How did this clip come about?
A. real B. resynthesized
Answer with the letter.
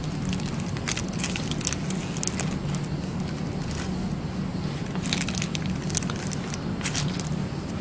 A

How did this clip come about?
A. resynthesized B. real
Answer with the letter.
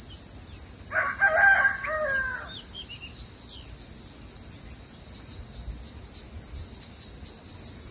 B